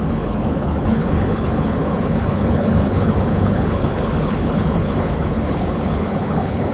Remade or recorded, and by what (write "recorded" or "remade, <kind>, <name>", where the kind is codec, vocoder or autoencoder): remade, codec, HILCodec